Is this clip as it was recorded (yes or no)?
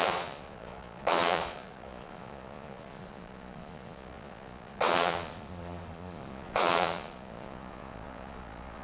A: no